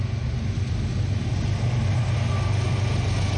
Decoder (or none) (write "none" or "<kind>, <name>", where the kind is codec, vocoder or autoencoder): none